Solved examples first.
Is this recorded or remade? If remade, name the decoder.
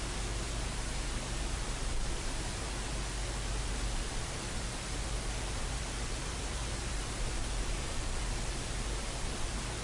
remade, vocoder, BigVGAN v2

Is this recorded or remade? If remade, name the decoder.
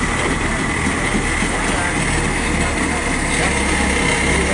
recorded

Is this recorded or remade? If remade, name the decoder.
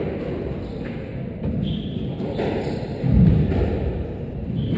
recorded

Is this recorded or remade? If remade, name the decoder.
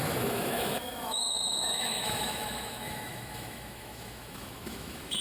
remade, autoencoder, DAC-VAE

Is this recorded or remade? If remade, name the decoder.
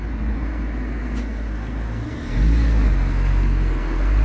remade, codec, SNAC